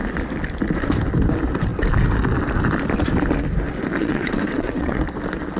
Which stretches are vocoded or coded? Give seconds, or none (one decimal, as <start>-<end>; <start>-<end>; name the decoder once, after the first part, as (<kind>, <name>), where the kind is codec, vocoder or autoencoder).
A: 4.0-5.0 (vocoder, WaveNeXt)